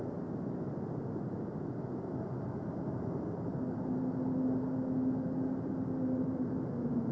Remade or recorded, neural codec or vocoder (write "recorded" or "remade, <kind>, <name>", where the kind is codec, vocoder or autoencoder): recorded